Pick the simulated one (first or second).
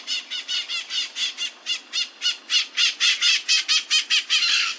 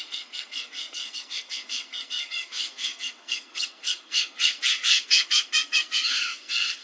second